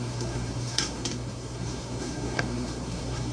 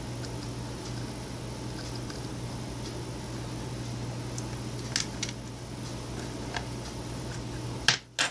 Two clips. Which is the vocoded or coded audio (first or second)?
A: first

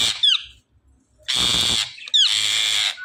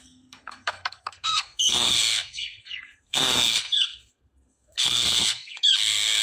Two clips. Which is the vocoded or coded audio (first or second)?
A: second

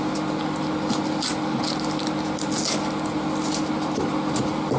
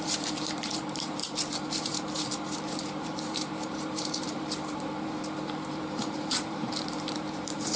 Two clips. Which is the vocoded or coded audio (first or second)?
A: second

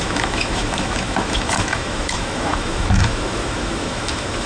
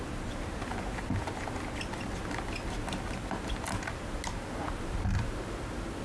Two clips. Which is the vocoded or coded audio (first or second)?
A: first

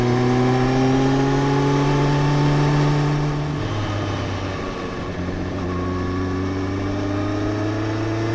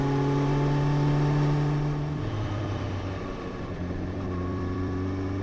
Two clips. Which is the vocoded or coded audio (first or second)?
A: second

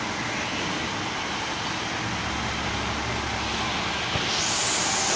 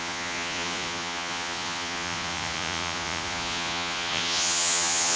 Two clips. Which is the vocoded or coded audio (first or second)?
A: second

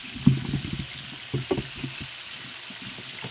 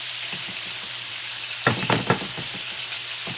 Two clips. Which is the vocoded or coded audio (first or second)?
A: second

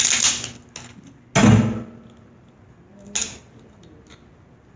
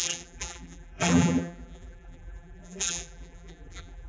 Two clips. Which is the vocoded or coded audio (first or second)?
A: second